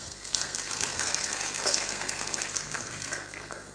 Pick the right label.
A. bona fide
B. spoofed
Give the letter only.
B